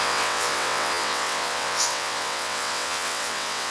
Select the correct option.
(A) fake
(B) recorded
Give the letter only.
A